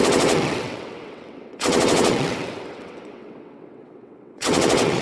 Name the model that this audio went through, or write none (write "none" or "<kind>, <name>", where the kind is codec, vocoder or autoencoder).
vocoder, WaveNeXt